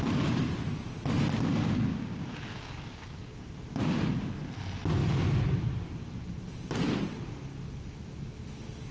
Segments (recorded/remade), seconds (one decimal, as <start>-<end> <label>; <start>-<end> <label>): 0.0-1.9 recorded; 1.9-3.6 remade; 3.6-8.9 recorded